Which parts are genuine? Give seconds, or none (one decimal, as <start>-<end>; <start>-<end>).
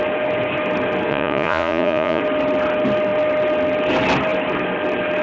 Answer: 0.0-1.1; 2.2-5.2